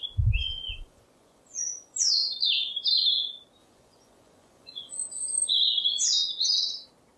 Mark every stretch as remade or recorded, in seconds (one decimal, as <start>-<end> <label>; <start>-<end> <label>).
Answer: 0.0-0.4 recorded; 0.4-2.5 remade; 2.5-3.6 recorded; 3.6-5.6 remade; 5.6-7.2 recorded